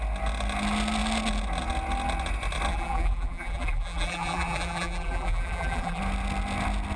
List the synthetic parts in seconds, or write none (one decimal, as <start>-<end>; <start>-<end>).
2.7-6.0

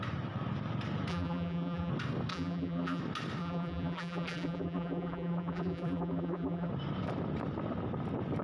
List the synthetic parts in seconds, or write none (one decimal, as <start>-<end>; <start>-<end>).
1.1-1.9; 2.3-3.0; 3.4-6.7

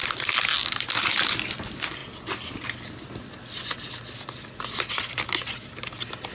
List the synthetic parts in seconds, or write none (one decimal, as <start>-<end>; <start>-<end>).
none

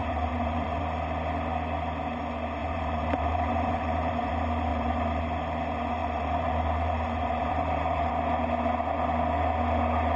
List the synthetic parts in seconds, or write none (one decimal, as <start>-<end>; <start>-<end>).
0.0-0.8; 2.6-4.3; 4.7-5.2; 6.0-8.1

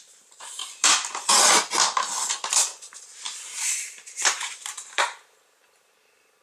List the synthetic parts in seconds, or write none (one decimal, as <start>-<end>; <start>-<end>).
0.0-0.6; 3.8-6.4

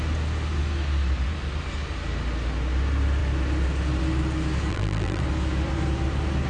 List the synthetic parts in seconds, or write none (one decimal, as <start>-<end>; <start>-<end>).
4.7-5.2

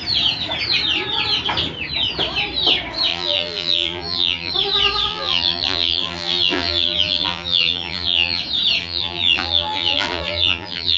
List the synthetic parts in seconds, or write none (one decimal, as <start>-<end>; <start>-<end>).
3.1-4.5; 5.1-8.4; 8.8-11.0